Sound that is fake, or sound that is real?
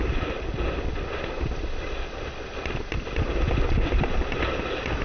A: real